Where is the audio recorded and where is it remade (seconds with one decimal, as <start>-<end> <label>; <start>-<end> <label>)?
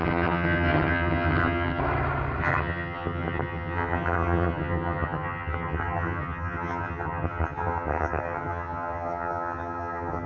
0.0-1.8 remade; 1.8-2.4 recorded; 2.4-10.3 remade